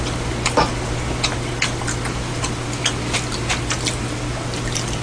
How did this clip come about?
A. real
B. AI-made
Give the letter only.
A